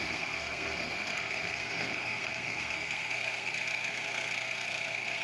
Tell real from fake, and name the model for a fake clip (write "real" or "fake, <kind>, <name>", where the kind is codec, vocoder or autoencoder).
fake, codec, SNAC